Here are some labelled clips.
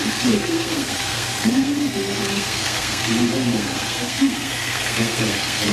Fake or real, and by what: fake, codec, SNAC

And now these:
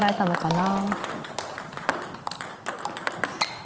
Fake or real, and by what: real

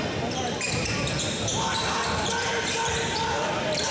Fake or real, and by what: fake, vocoder, BigVGAN v2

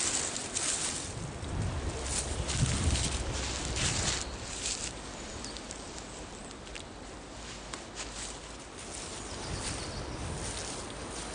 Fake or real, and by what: real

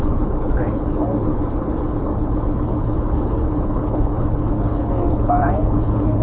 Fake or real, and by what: fake, codec, HILCodec